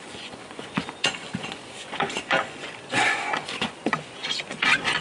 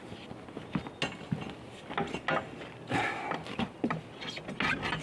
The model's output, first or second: first